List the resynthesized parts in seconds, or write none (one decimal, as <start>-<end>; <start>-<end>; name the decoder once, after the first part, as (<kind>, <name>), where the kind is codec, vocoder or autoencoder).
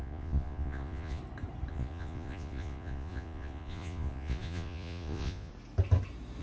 0.0-1.2 (vocoder, Vocos); 1.7-5.5